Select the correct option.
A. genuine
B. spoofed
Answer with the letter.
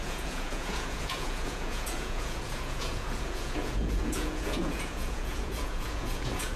B